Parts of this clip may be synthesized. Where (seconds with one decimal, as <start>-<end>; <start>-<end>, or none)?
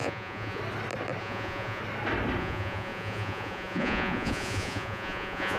0.0-0.6; 1.2-1.8; 2.4-5.6